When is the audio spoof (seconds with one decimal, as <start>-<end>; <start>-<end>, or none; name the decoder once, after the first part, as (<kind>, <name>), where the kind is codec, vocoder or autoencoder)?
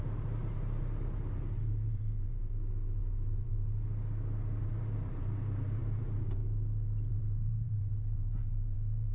0.0-2.5 (vocoder, BigVGAN v2); 3.0-3.6; 4.6-6.4; 7.1-9.1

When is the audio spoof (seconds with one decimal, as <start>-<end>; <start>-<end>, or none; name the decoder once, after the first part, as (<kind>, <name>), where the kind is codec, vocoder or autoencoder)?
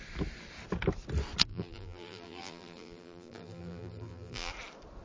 1.5-4.5 (vocoder, BigVGAN v2)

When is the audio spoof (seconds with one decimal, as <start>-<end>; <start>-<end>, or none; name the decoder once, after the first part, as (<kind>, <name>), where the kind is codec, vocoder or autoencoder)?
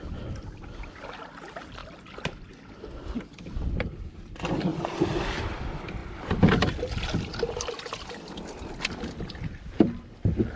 4.7-5.6 (vocoder, BigVGAN v2)